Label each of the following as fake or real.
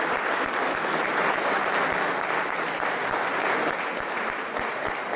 real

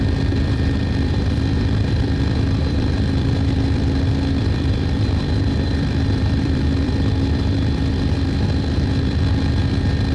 fake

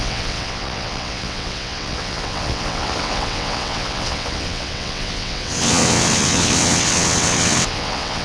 fake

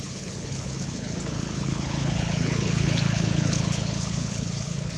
fake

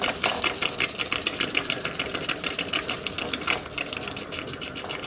real